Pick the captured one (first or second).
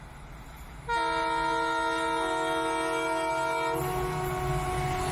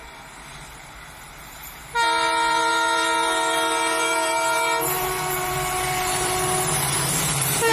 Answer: first